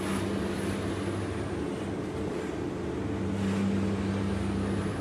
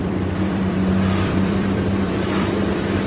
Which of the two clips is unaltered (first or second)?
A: first